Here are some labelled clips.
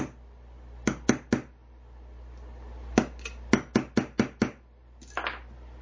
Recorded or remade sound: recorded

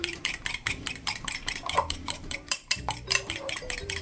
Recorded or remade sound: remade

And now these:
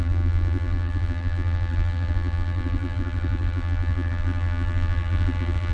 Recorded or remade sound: remade